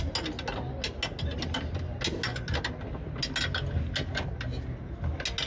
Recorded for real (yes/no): yes